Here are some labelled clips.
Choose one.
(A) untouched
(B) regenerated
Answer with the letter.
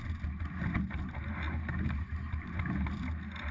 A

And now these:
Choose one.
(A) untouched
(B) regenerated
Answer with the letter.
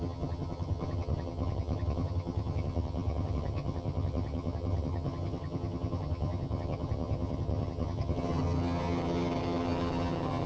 B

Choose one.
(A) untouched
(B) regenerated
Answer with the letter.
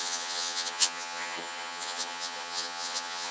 B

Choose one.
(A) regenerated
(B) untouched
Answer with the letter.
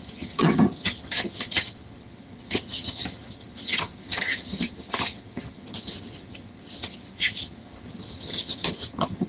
A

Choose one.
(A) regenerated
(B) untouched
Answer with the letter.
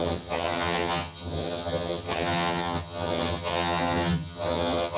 A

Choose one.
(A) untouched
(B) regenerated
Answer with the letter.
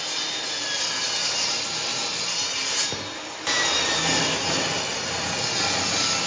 A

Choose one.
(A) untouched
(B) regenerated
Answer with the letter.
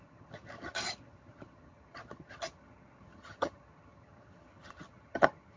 B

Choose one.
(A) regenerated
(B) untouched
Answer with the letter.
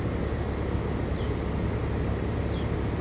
B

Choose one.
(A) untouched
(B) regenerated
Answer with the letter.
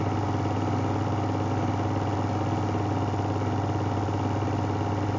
A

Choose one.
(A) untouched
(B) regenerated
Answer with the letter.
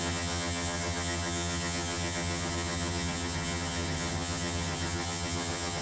B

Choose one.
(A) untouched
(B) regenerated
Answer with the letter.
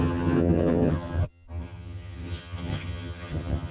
B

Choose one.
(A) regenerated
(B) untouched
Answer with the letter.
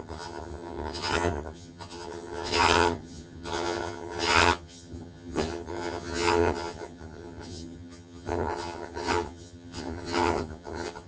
A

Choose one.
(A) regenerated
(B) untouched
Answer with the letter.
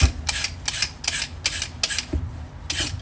B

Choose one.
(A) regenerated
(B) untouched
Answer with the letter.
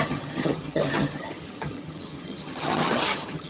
A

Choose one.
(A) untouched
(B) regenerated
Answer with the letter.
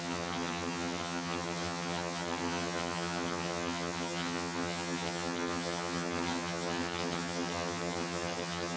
B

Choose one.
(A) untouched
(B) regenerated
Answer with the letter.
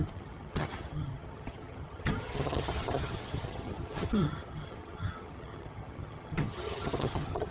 B